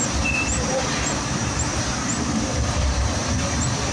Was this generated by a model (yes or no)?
yes